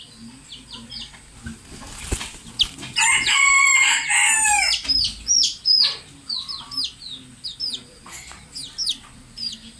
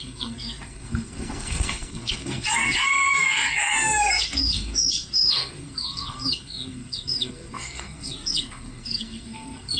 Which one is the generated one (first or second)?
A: second